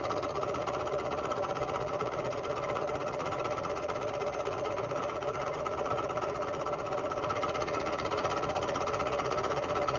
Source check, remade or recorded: remade